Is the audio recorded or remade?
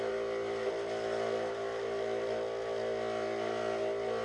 recorded